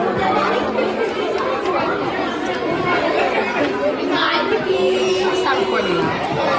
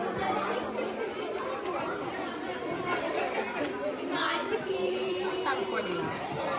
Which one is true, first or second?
first